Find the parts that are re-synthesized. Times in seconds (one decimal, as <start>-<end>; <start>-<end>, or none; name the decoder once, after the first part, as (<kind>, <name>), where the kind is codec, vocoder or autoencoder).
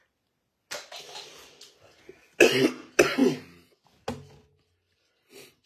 none